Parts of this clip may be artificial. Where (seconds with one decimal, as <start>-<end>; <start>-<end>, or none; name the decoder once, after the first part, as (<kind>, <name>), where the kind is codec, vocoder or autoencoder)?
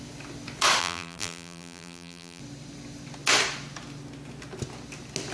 0.8-2.4 (vocoder, BigVGAN v2)